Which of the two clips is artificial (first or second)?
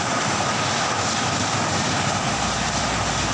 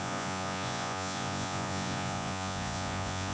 second